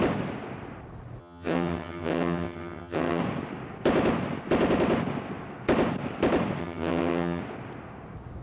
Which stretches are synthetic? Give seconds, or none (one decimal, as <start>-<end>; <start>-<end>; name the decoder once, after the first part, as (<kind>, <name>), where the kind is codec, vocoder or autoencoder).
1.2-3.2 (vocoder, HiFi-GAN); 6.6-7.4